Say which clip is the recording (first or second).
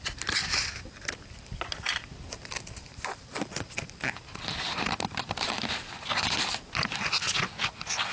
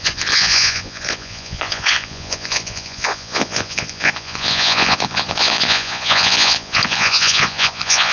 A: first